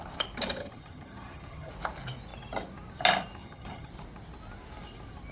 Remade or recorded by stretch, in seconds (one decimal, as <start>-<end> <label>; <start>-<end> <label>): 0.0-0.6 recorded; 0.6-1.7 remade; 1.7-3.4 recorded; 3.4-3.9 remade; 3.9-5.3 recorded

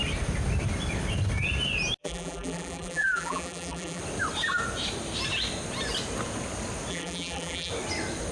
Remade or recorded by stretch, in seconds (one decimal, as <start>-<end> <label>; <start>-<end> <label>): 0.0-2.0 recorded; 2.0-4.0 remade; 4.0-6.9 recorded; 6.9-7.7 remade; 7.7-8.3 recorded

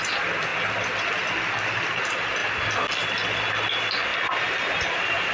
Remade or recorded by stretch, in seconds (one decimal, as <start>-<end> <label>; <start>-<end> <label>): 0.0-5.3 recorded

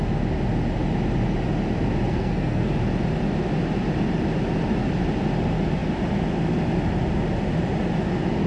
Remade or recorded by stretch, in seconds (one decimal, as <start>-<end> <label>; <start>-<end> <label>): 0.0-2.1 recorded; 2.1-2.7 remade; 2.7-8.5 recorded

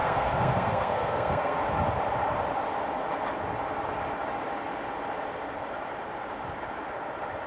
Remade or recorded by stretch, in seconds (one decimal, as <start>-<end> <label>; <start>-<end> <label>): 0.0-1.6 remade; 1.6-7.5 recorded

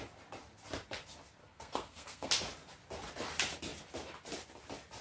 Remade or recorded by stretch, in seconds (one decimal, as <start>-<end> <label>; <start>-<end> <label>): 0.0-1.4 recorded; 1.4-2.3 remade; 2.3-5.0 recorded

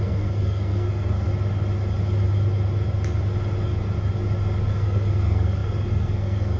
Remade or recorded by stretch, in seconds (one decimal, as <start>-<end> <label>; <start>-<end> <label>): 0.0-1.3 remade; 1.3-4.7 recorded; 4.7-6.6 remade